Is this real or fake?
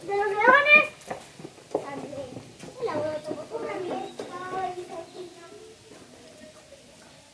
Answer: real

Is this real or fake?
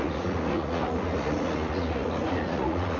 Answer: fake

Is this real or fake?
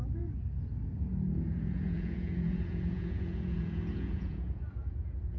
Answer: fake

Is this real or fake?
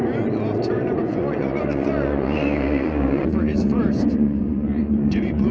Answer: fake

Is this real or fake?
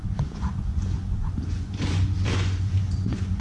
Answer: fake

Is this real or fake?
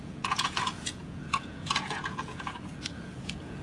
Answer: fake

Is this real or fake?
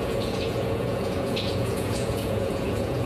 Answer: fake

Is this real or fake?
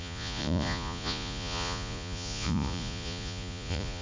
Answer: fake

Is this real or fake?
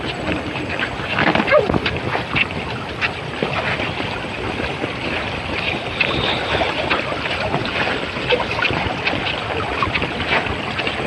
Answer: real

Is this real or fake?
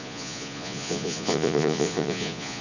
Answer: fake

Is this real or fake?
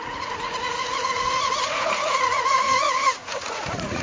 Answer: fake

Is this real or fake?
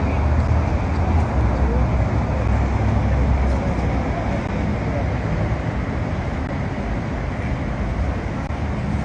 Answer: real